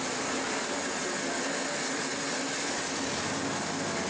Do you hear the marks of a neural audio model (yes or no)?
no